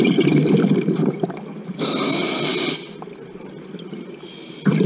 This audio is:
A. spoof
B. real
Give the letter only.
B